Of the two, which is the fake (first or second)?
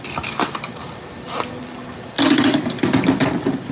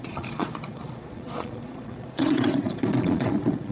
second